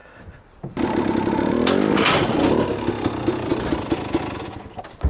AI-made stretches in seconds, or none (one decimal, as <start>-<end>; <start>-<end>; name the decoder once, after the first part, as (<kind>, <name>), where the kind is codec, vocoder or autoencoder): none